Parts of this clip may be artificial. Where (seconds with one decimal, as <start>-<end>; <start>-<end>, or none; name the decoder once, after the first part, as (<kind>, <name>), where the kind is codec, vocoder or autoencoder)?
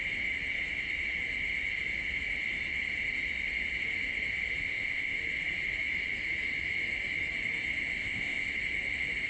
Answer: 4.6-5.2 (codec, ZipCodec); 8.0-8.5